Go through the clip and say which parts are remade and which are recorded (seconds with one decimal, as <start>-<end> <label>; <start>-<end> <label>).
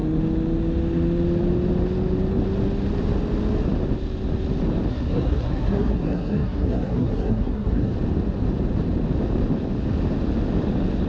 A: 0.0-4.9 recorded; 4.9-7.9 remade; 7.9-11.1 recorded